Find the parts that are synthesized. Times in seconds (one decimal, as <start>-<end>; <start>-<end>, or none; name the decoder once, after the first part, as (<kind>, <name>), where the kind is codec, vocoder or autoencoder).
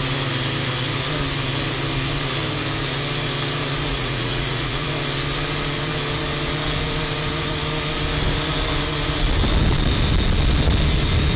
3.9-4.9 (vocoder, Vocos)